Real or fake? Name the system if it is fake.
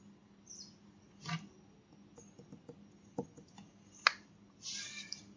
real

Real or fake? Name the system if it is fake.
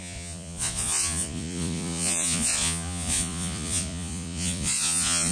fake, vocoder, Vocos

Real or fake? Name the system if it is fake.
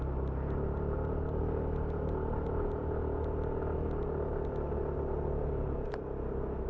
real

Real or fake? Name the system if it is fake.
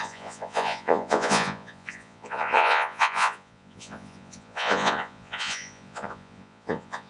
fake, vocoder, Vocos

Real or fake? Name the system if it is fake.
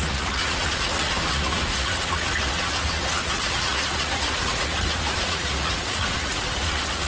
fake, vocoder, Vocos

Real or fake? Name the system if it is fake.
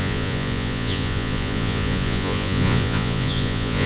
fake, vocoder, Vocos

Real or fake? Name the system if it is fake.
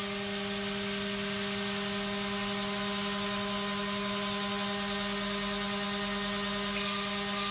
real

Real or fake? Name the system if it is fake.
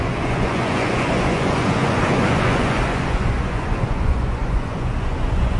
fake, vocoder, Vocos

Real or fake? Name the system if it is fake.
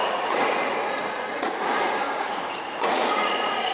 fake, vocoder, Vocos